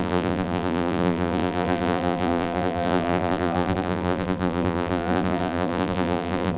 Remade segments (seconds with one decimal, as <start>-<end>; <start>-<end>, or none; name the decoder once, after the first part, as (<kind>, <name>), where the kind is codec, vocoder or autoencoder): 0.0-6.6 (vocoder, BigVGAN v2)

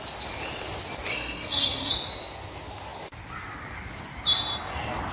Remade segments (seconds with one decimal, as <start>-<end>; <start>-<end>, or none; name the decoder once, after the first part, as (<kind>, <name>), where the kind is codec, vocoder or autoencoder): 1.1-1.9 (codec, SNAC)

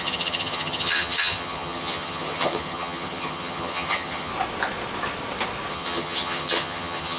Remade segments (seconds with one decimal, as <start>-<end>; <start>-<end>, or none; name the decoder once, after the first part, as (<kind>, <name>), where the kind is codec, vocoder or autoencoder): 0.0-4.3 (vocoder, HiFi-GAN); 5.7-7.2

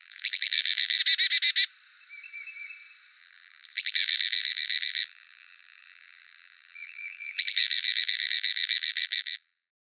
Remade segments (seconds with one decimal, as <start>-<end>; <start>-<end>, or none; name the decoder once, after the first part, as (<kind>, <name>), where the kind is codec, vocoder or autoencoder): 0.0-1.0 (vocoder, BigVGAN v2); 3.2-9.9

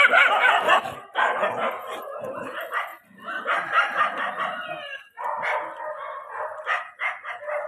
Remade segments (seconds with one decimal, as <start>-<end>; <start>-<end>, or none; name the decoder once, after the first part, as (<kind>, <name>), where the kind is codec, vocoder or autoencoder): none

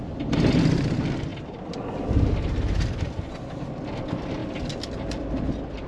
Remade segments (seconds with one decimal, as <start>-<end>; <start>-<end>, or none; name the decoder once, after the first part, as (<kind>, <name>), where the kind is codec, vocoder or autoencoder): none

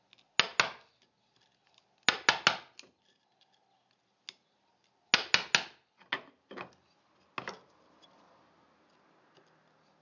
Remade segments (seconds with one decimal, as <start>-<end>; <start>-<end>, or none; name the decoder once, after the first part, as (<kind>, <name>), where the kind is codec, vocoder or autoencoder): none